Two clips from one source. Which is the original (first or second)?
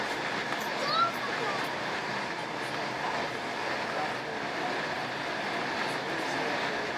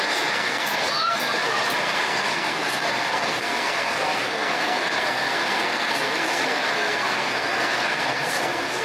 first